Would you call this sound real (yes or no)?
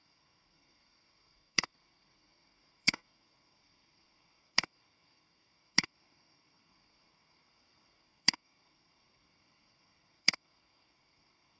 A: no